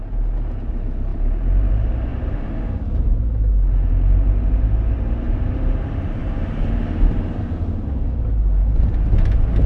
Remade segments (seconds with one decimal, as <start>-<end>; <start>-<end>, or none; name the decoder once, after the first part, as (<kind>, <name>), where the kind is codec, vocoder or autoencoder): none